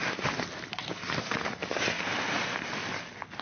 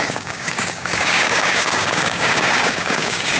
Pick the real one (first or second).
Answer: first